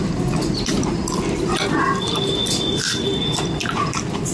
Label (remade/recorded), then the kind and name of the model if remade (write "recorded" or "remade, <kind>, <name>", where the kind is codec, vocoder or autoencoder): recorded